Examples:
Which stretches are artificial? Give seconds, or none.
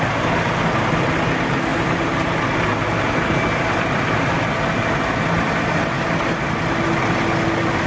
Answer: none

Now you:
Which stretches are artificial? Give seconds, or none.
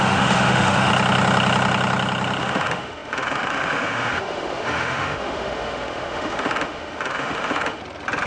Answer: 0.0-0.9 (autoencoder, DAC-VAE); 2.4-7.8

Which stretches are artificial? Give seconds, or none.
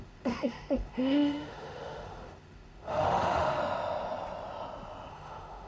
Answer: 0.0-3.6 (autoencoder, DAC-VAE); 5.1-5.7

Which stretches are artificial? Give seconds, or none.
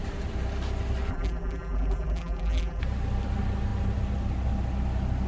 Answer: 1.1-2.8 (vocoder, BigVGAN v2)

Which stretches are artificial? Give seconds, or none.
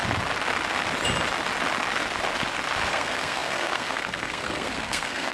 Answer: 2.9-5.3 (codec, SNAC)